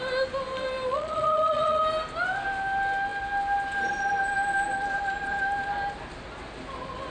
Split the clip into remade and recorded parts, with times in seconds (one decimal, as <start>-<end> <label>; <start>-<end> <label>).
0.0-0.9 recorded; 0.9-1.8 remade; 1.8-7.1 recorded

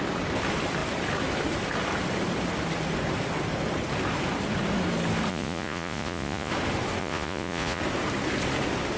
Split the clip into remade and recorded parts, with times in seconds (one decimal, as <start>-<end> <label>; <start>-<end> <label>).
0.0-5.3 recorded; 5.3-6.5 remade; 6.5-7.0 recorded; 7.0-7.8 remade; 7.8-9.0 recorded

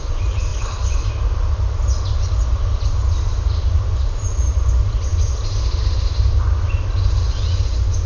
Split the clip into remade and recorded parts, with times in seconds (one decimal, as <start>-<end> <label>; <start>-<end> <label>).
0.0-0.5 recorded; 0.5-1.1 remade; 1.1-8.1 recorded

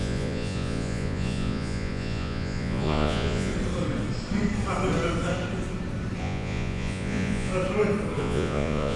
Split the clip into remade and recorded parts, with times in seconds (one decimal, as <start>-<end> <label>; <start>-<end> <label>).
0.0-3.5 remade; 3.5-6.2 recorded; 6.2-7.5 remade; 7.5-8.2 recorded; 8.2-9.0 remade